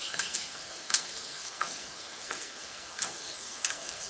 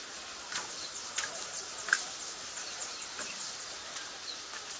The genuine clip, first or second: second